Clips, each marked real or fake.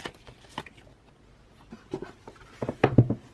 real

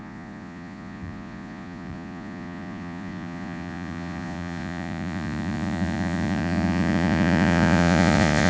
fake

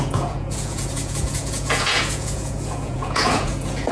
fake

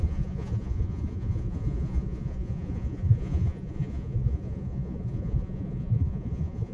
fake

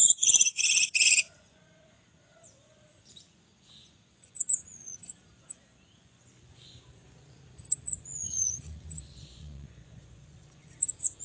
fake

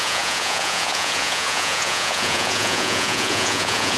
fake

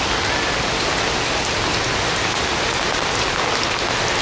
real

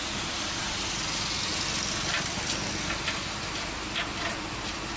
real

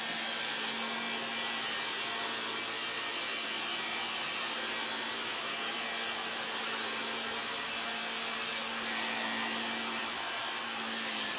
real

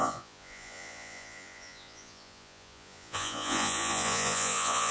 fake